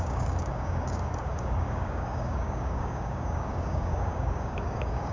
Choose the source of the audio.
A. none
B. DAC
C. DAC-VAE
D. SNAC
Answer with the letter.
B